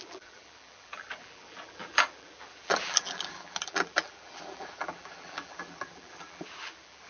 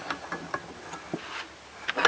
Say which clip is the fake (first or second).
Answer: first